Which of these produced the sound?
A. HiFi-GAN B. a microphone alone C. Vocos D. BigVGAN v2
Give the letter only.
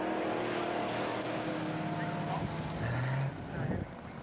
B